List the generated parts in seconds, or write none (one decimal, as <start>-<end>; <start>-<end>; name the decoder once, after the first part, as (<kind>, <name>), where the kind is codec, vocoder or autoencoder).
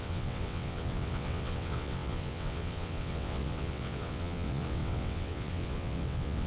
0.0-6.5 (vocoder, WaveNeXt)